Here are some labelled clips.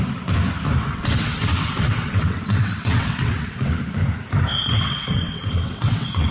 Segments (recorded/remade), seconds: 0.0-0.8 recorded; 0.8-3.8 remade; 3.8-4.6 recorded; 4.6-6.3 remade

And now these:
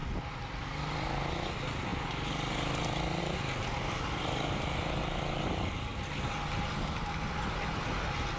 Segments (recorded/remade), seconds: 0.0-8.4 recorded

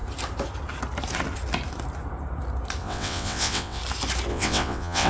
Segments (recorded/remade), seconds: 0.0-2.8 recorded; 2.8-3.8 remade; 3.8-4.3 recorded; 4.3-5.1 remade

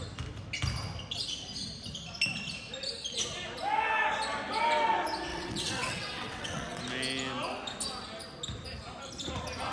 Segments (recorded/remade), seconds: 0.0-5.3 recorded; 5.3-6.8 remade; 6.8-9.7 recorded

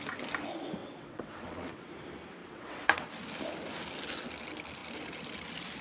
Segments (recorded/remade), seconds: 0.0-0.8 recorded; 0.8-1.9 remade; 1.9-2.4 recorded; 2.4-3.1 remade; 3.1-5.8 recorded

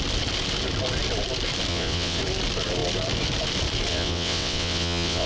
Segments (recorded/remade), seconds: 0.0-1.7 recorded; 1.7-2.2 remade; 2.2-3.9 recorded; 3.9-5.3 remade

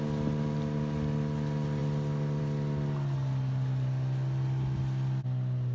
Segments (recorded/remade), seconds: 0.0-5.7 recorded